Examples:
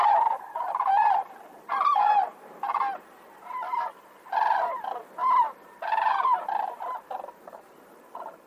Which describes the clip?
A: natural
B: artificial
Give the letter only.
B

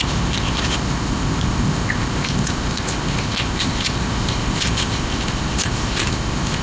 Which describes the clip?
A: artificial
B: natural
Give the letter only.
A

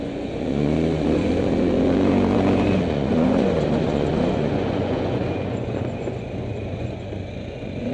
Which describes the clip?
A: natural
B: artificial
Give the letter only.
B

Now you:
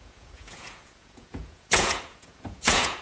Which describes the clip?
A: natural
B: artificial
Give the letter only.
B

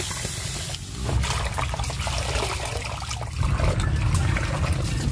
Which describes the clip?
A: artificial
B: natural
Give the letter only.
B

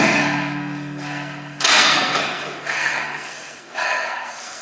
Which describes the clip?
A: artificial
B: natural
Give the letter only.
A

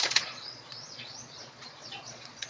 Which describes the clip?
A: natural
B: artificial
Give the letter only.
B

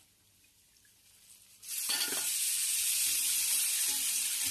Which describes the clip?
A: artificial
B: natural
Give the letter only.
B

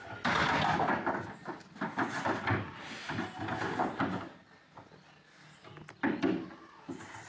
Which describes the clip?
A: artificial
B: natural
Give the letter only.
B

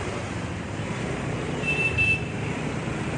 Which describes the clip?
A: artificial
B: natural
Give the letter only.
A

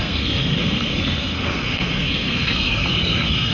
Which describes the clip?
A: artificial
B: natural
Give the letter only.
A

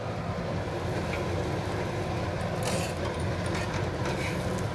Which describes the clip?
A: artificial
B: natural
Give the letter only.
B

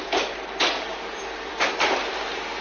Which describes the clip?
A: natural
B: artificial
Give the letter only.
B